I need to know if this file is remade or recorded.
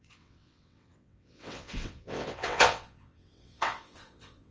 remade